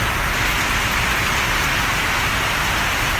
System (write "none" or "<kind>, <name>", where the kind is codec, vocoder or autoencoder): none